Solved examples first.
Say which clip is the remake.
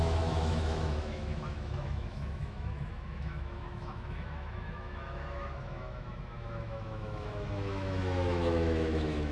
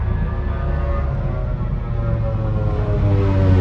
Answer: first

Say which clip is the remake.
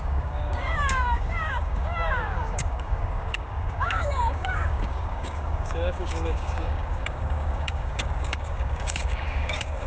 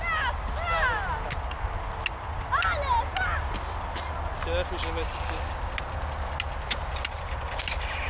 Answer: first